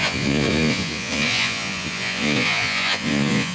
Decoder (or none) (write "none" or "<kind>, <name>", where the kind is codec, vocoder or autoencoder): vocoder, Vocos